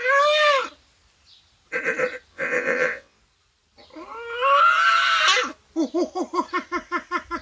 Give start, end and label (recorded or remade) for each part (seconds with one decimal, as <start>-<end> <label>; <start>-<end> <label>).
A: 0.0-2.3 recorded; 2.3-3.2 remade; 3.2-7.4 recorded